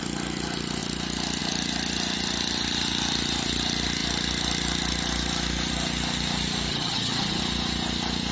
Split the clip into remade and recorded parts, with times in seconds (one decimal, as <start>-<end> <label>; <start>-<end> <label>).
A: 0.0-6.7 recorded; 6.7-7.4 remade; 7.4-8.3 recorded